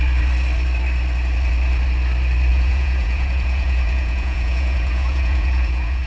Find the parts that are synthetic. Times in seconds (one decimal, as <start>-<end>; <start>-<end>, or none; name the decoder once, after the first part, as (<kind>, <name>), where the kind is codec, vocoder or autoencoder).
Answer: 2.5-6.1 (vocoder, Vocos)